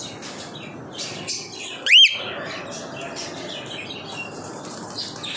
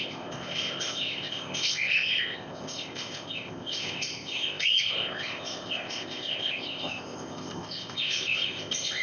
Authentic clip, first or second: first